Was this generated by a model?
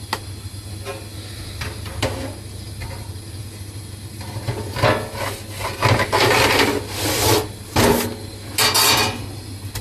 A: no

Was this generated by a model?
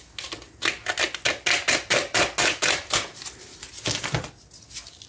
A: no